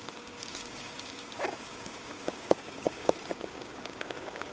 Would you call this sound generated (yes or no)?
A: yes